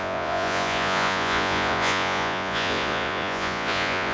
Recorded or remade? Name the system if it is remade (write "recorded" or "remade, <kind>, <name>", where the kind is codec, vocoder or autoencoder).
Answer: remade, vocoder, Vocos